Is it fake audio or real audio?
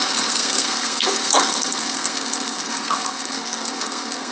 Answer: fake